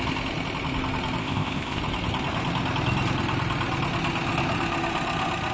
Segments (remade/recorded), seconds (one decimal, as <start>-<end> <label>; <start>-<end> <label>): 0.0-1.2 recorded; 1.2-1.8 remade; 1.8-5.5 recorded